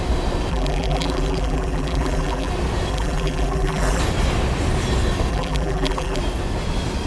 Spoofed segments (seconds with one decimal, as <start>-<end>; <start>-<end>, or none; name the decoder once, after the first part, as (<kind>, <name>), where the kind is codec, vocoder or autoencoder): 0.5-2.5 (vocoder, BigVGAN v2); 2.9-4.0; 5.3-6.2